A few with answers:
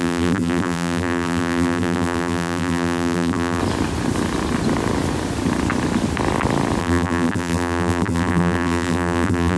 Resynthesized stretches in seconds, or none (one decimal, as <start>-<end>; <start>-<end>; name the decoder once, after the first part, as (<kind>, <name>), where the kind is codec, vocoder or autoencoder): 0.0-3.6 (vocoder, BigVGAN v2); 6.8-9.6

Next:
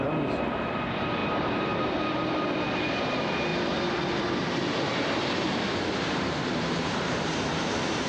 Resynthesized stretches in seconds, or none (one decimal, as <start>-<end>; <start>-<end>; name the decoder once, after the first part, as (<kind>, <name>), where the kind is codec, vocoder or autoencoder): 0.0-3.5 (vocoder, BigVGAN v2); 4.5-8.1

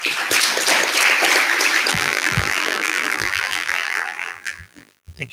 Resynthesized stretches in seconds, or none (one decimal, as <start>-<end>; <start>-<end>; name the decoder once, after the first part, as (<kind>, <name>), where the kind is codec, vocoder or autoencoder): 1.9-5.3 (vocoder, BigVGAN v2)

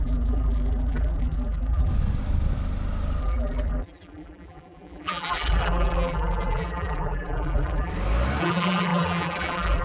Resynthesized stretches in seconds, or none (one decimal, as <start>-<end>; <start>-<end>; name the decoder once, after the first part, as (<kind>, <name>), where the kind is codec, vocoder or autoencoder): 0.0-1.9 (vocoder, BigVGAN v2); 3.2-7.9; 8.4-9.8

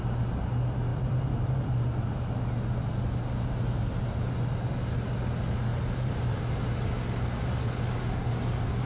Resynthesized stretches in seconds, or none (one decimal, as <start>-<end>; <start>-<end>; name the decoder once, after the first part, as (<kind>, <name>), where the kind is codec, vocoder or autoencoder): 5.7-6.4 (vocoder, BigVGAN v2)

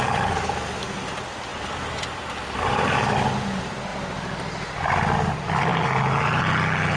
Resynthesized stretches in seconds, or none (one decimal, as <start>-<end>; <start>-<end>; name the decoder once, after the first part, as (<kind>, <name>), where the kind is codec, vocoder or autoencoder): 1.5-2.2 (vocoder, BigVGAN v2)

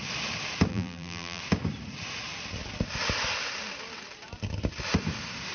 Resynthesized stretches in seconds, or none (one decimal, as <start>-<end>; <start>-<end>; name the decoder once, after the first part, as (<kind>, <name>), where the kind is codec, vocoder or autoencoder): 0.7-1.4 (vocoder, BigVGAN v2)